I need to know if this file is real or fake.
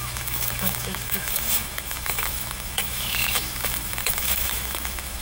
fake